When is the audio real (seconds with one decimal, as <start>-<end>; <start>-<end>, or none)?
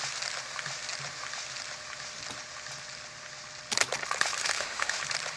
0.0-4.4; 5.0-5.4